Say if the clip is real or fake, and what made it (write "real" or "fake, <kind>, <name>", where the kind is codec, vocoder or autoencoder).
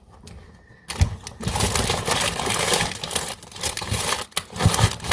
real